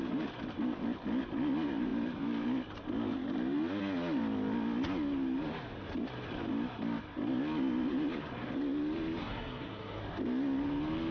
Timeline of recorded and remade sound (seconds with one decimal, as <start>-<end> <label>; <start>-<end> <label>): 0.0-9.2 recorded; 9.2-10.0 remade; 10.0-11.1 recorded